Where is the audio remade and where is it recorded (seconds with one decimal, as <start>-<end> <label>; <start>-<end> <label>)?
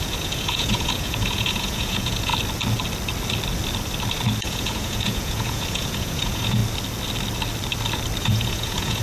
0.0-2.3 remade; 2.3-4.4 recorded; 4.4-6.6 remade; 6.6-8.2 recorded; 8.2-9.0 remade